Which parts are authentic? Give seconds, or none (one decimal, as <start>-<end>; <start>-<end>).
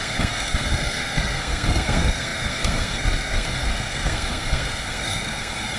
none